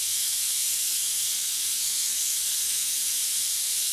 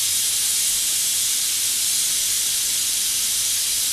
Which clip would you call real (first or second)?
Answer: second